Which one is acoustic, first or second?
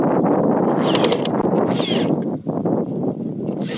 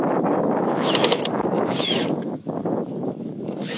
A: first